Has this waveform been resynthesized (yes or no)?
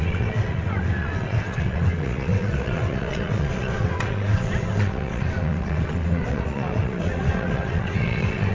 yes